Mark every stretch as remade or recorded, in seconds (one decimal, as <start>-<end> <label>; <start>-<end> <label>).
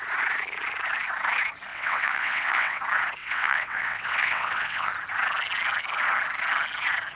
0.0-1.7 recorded; 1.7-2.8 remade; 2.8-3.2 recorded; 3.2-4.9 remade; 4.9-7.2 recorded